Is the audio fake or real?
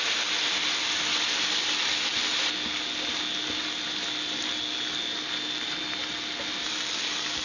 real